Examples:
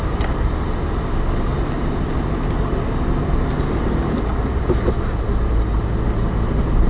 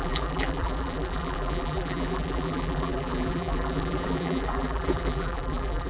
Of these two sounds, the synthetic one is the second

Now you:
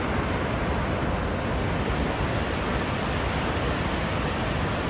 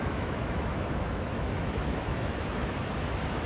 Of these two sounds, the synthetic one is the second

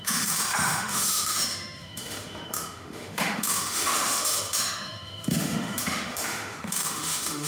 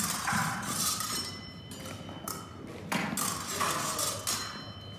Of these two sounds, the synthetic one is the first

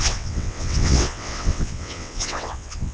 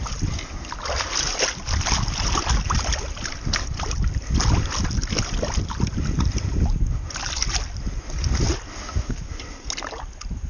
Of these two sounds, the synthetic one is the first